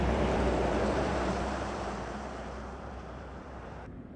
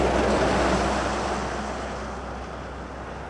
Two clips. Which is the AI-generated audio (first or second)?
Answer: first